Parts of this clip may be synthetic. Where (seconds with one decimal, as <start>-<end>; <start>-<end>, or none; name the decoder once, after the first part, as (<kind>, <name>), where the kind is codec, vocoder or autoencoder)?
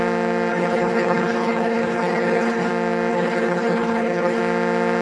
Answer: 0.5-2.7 (codec, HILCodec); 3.1-4.4